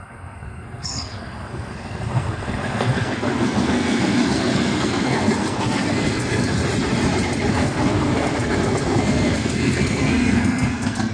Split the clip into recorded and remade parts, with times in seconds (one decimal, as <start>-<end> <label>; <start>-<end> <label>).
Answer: 0.0-6.6 remade; 6.6-7.5 recorded; 7.5-11.1 remade